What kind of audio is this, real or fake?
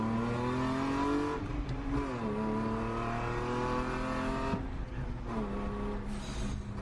real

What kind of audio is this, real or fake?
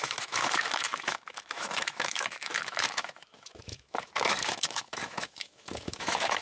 fake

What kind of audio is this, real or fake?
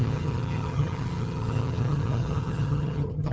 fake